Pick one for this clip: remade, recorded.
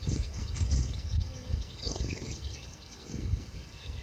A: remade